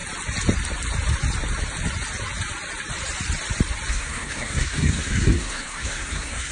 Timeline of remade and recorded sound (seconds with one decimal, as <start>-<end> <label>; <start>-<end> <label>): 0.0-3.9 recorded; 3.9-6.5 remade